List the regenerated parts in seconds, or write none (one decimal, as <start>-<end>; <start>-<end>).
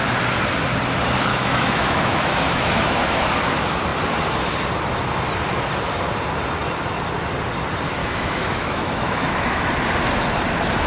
1.3-3.3; 8.0-9.7